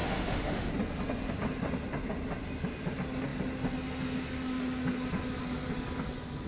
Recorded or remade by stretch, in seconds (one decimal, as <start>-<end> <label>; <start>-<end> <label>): 0.0-0.7 remade; 0.7-6.5 recorded